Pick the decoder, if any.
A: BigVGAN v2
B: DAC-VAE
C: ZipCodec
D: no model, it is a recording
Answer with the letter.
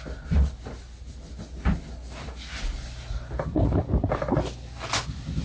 D